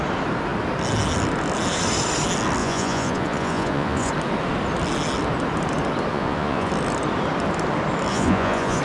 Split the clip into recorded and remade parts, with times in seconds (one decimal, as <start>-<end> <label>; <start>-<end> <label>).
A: 0.0-2.6 recorded; 2.6-4.1 remade; 4.1-6.1 recorded; 6.1-6.7 remade; 6.7-8.1 recorded; 8.1-8.8 remade